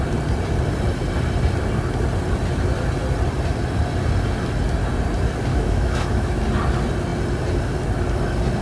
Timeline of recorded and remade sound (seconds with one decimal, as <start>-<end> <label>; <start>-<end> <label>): 0.0-5.5 recorded; 5.5-6.4 remade; 6.4-8.6 recorded